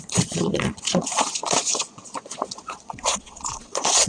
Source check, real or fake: fake